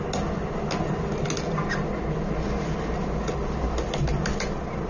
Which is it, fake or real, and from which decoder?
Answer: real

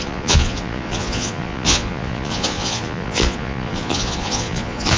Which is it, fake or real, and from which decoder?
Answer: fake, vocoder, Vocos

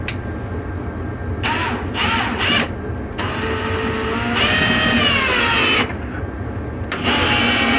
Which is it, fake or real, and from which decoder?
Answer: real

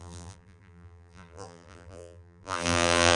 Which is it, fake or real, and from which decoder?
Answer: fake, vocoder, BigVGAN v2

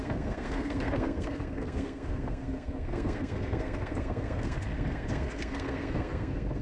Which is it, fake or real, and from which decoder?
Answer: fake, codec, SNAC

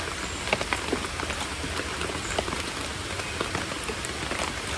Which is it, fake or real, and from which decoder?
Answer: real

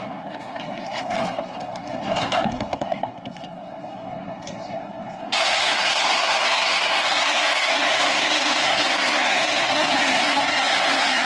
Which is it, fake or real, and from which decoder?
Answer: fake, codec, SNAC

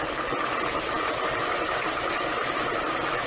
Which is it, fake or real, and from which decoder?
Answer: fake, vocoder, BigVGAN v2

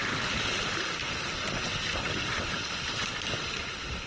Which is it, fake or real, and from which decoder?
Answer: real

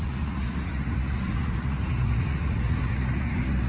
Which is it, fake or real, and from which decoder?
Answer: fake, vocoder, Vocos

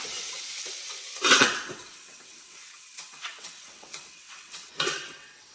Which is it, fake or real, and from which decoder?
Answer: fake, vocoder, WaveNeXt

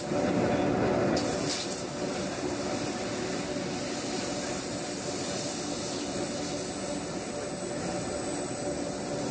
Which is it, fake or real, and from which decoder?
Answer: real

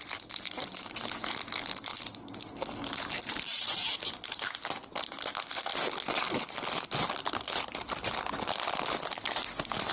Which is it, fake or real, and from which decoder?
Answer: real